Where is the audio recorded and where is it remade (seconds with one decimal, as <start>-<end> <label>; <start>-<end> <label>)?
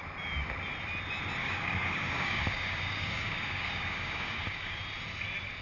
0.0-1.4 recorded; 1.4-4.8 remade; 4.8-5.6 recorded